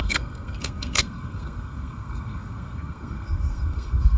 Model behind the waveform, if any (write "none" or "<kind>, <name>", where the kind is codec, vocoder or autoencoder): codec, SNAC